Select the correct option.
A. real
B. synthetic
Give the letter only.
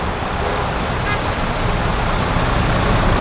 A